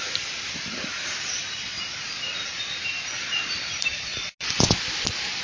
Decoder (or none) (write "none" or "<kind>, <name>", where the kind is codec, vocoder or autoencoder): none